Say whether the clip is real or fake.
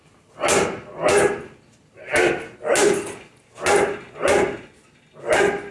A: real